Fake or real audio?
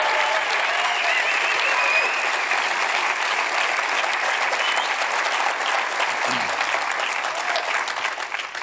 real